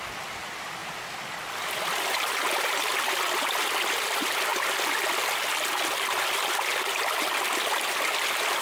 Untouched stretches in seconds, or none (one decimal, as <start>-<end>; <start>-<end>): 0.0-8.6